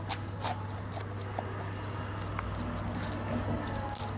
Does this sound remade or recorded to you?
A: recorded